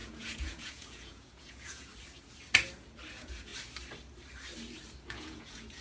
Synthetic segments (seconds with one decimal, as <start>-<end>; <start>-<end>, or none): 0.0-1.9; 3.1-3.5; 5.1-5.8